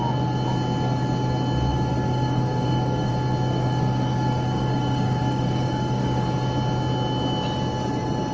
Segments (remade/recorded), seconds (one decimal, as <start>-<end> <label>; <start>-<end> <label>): 0.0-1.7 recorded; 1.7-3.1 remade; 3.1-3.5 recorded; 3.5-6.2 remade; 6.2-8.3 recorded